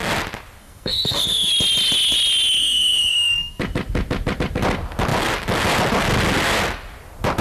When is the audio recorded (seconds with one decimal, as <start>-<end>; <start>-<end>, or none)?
0.0-0.6; 1.5-2.6; 3.6-7.4